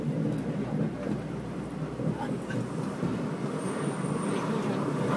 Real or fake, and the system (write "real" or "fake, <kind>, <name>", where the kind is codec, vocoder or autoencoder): real